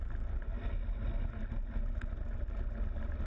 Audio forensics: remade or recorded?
recorded